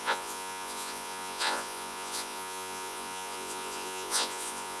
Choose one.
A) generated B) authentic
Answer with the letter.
A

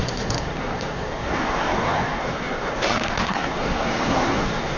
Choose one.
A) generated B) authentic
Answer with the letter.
A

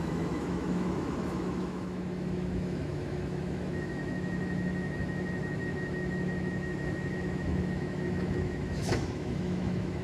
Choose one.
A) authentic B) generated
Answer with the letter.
B